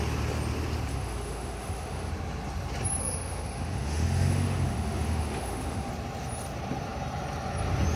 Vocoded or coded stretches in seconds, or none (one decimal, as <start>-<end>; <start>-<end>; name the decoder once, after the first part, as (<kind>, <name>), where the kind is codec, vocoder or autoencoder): 0.9-2.1 (autoencoder, DAC-VAE); 3.0-5.9